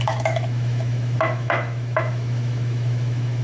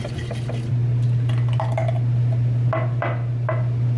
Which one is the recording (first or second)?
second